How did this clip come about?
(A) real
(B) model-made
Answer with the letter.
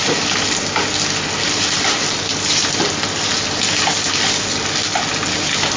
A